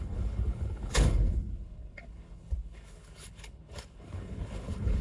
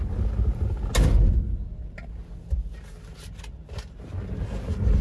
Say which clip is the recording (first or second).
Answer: second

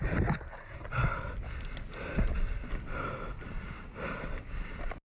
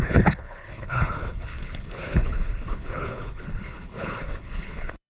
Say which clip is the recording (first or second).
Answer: first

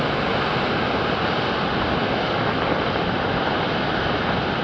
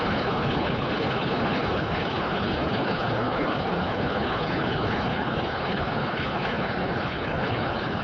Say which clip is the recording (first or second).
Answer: first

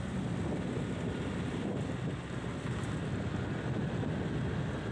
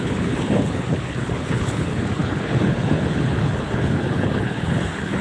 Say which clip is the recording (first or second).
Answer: first